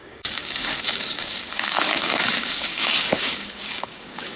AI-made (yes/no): yes